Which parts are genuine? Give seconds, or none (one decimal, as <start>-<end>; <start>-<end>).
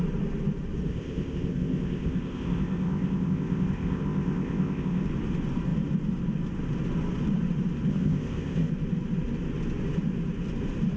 0.0-0.9; 5.1-7.9; 8.7-11.0